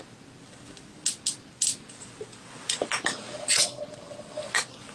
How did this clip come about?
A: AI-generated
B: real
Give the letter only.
B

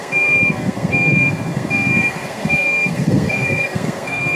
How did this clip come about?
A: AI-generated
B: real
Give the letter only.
A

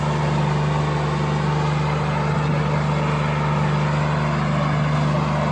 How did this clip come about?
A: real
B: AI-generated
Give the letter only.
A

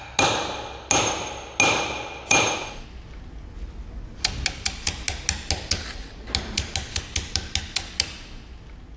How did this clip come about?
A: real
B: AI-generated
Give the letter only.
A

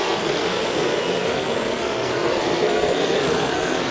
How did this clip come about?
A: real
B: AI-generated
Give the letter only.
B